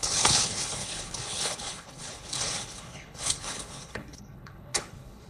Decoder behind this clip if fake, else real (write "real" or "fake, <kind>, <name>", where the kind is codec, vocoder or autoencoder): fake, codec, HILCodec